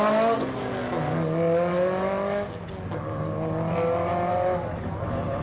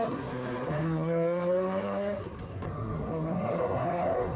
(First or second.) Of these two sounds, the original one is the first